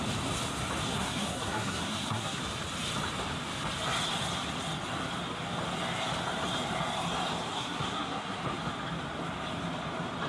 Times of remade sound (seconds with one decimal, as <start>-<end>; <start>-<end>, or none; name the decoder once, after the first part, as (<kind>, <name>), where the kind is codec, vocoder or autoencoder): 0.9-2.4 (codec, SNAC); 7.5-8.4